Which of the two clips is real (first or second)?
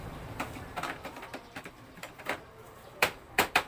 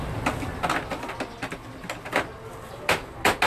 second